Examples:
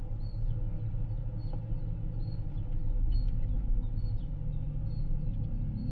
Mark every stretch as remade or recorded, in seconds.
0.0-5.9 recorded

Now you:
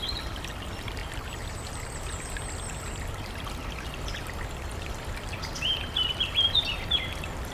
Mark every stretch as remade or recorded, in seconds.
0.0-1.0 remade; 1.0-2.9 recorded; 2.9-7.5 remade